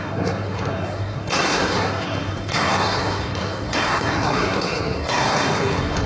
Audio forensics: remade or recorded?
remade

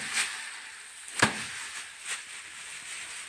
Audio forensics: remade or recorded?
recorded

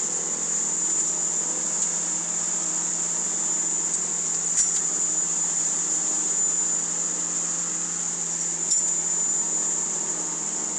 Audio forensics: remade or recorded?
recorded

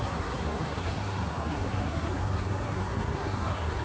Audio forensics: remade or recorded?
remade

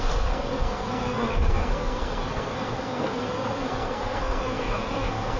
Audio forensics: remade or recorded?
remade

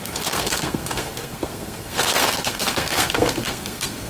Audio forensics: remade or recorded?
remade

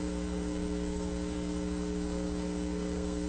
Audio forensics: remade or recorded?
remade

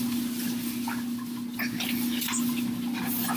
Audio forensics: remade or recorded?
recorded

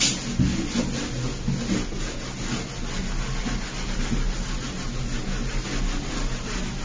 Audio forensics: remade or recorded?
recorded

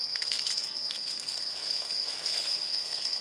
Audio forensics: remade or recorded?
remade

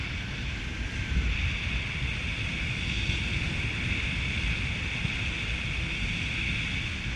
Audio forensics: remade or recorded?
recorded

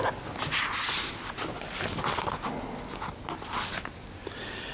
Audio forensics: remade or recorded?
recorded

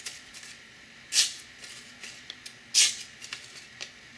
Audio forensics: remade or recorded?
recorded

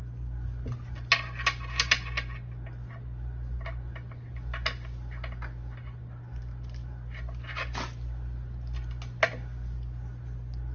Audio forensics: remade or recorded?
recorded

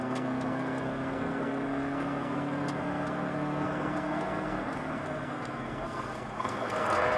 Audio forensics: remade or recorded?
remade